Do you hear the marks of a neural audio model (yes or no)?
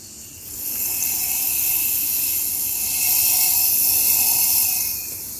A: no